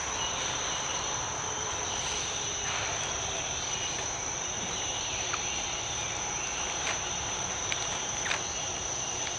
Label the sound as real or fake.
fake